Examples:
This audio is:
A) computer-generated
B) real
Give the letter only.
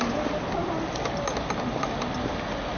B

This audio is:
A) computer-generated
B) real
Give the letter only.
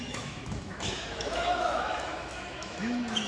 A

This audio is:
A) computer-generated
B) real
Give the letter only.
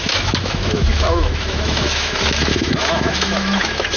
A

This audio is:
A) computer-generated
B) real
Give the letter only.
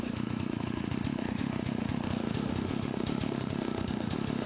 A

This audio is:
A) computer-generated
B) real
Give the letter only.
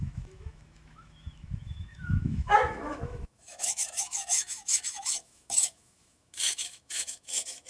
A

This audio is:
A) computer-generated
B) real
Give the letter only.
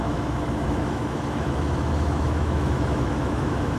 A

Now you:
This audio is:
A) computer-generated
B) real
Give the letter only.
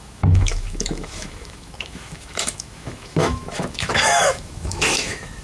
A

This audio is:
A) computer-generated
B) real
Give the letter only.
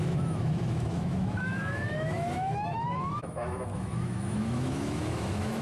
A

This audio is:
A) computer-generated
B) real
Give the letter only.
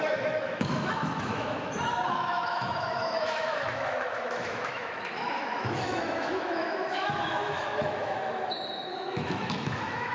A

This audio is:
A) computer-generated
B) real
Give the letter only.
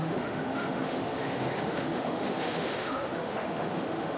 A